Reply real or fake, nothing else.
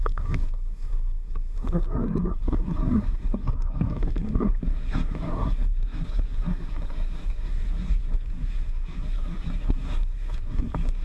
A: fake